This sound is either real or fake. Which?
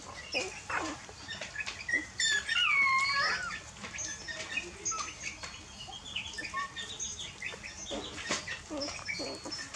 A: real